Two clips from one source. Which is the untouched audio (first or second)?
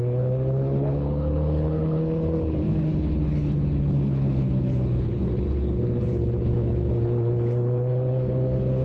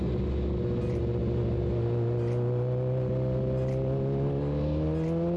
second